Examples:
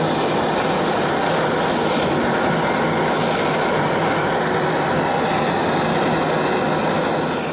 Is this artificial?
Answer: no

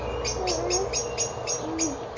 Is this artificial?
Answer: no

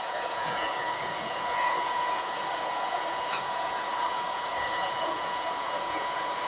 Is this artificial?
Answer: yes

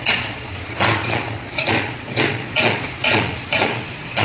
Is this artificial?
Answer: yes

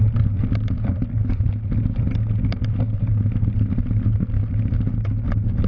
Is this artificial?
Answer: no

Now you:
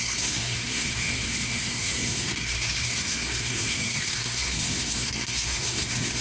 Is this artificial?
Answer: yes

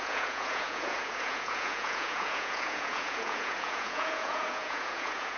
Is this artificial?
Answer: yes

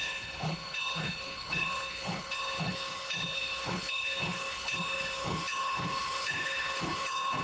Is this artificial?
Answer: yes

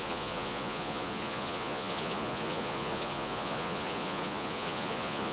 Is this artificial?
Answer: yes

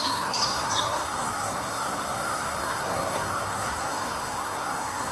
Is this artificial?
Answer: yes